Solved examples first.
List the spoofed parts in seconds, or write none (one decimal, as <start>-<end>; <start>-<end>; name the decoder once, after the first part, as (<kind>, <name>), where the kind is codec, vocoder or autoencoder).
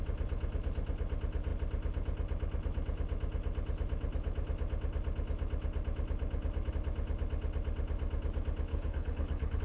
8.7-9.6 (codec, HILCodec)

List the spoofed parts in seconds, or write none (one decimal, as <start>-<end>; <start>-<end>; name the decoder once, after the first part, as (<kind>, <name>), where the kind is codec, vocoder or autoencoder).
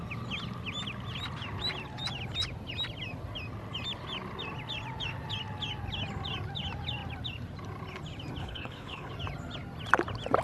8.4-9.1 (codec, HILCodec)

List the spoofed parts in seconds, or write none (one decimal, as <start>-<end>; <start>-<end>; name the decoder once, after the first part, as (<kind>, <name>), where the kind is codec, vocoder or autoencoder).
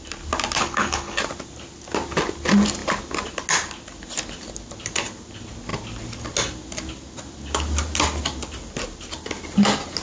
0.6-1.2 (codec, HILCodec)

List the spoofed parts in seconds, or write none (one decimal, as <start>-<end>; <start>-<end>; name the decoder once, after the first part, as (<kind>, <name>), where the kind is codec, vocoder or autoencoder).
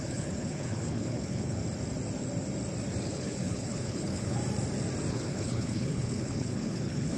0.0-1.6 (codec, HILCodec); 3.0-4.4; 5.1-7.2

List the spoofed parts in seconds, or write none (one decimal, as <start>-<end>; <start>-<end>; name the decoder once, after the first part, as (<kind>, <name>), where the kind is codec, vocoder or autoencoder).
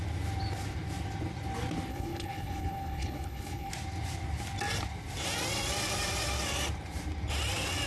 1.9-3.7 (codec, HILCodec)